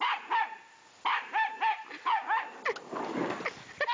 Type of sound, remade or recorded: recorded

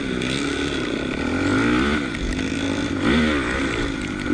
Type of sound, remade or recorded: recorded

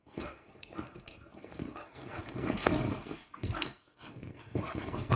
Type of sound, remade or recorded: remade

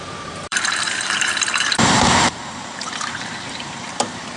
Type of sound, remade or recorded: remade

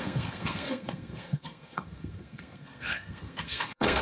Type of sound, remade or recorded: remade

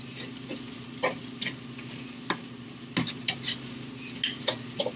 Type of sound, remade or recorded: recorded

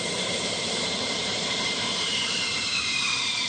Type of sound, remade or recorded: remade